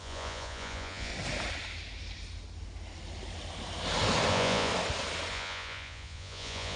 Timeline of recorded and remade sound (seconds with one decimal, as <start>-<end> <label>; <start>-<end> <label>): 0.0-1.1 remade; 1.1-4.3 recorded; 4.3-4.7 remade; 4.7-5.3 recorded; 5.3-6.8 remade